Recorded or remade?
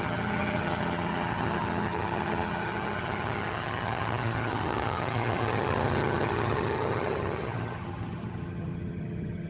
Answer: remade